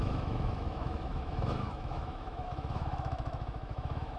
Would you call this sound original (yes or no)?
no